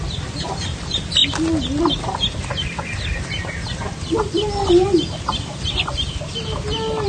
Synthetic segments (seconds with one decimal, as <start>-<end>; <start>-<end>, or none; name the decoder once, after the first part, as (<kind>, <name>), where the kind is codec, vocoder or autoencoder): none